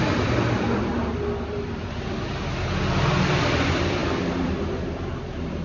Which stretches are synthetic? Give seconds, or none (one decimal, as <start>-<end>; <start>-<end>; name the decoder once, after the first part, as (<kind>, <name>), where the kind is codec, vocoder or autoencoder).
0.0-1.8 (vocoder, BigVGAN v2); 2.8-5.6